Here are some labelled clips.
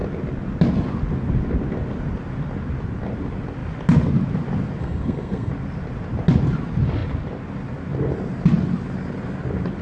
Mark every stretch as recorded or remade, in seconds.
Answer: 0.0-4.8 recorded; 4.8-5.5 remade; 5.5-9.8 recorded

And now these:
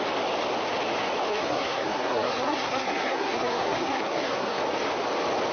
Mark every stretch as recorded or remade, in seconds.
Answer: 0.0-1.3 recorded; 1.3-4.6 remade; 4.6-5.5 recorded

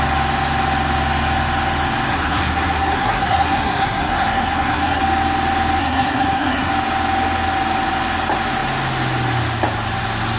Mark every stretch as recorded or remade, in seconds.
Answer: 0.0-2.1 recorded; 2.1-5.0 remade; 5.0-5.8 recorded; 5.8-6.7 remade; 6.7-10.4 recorded